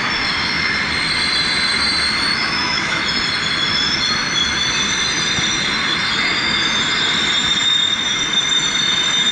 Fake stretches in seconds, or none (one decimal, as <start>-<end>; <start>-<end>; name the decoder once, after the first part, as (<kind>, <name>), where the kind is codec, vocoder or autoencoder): 2.3-3.0 (autoencoder, DAC-VAE)